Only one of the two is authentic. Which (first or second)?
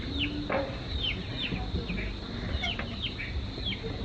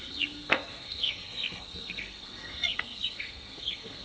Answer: first